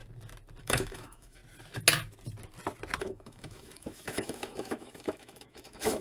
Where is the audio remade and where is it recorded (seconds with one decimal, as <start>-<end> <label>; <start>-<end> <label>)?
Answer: 0.0-0.6 recorded; 0.6-1.4 remade; 1.4-3.0 recorded; 3.0-6.0 remade